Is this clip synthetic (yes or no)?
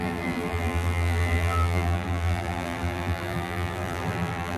yes